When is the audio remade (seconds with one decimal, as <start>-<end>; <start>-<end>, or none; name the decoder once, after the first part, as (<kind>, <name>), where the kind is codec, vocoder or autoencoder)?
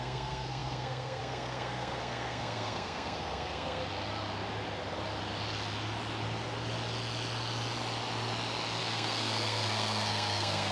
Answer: 0.0-3.8 (codec, SNAC); 8.8-10.7